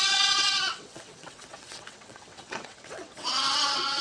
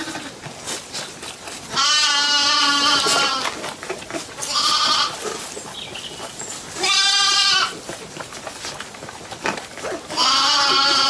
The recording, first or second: second